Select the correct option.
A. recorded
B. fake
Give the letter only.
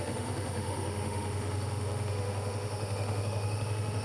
B